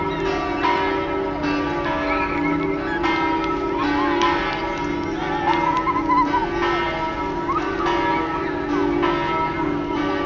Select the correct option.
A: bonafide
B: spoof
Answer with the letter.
A